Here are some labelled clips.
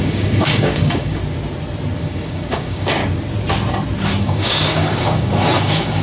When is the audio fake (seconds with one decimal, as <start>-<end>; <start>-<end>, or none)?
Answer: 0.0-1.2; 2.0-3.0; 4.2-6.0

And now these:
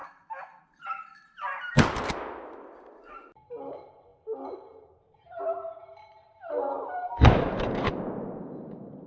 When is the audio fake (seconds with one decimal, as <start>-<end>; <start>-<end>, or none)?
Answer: 3.0-9.1

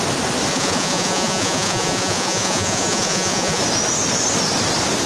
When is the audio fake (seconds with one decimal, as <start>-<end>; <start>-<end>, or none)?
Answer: 0.5-3.6

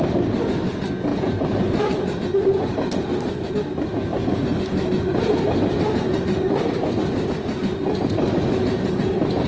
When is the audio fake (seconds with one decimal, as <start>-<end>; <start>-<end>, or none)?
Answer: 1.1-3.5; 5.1-5.7

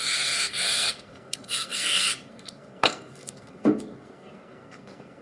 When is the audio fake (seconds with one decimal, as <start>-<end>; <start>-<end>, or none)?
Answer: 0.0-5.2

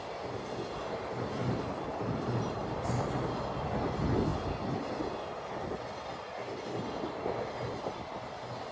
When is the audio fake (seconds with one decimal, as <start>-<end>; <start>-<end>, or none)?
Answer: 1.4-3.1

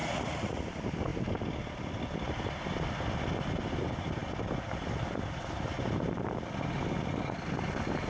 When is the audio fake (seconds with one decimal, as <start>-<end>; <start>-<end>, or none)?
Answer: 0.0-0.6